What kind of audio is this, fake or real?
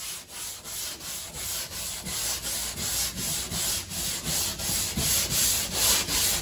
real